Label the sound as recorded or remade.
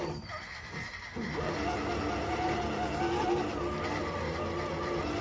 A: recorded